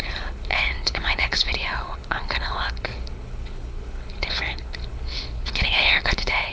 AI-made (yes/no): yes